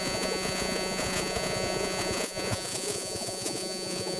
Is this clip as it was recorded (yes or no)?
no